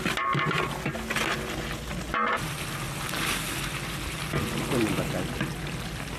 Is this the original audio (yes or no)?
yes